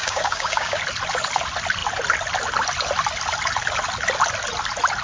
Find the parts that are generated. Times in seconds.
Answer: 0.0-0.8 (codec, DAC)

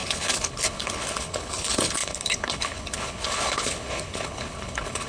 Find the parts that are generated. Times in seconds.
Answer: 0.0-5.1 (codec, HILCodec)

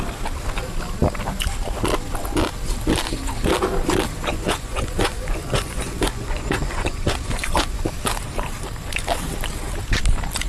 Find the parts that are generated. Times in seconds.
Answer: 4.3-7.8 (vocoder, Vocos)

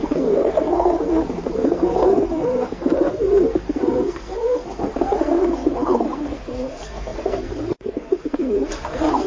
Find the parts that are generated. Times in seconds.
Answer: 0.0-9.3 (codec, SNAC)

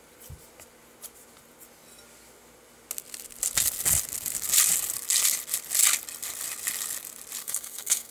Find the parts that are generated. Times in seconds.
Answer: 7.4-8.1 (codec, SNAC)

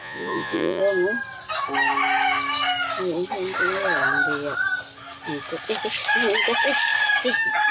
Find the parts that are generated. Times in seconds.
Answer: 0.0-0.8 (vocoder, Vocos)